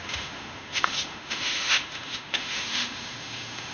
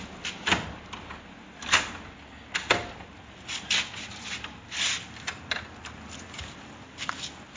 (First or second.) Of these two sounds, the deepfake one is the first